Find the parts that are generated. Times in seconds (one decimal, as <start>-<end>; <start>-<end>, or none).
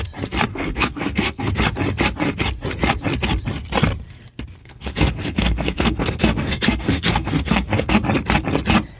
0.5-1.5; 4.6-7.9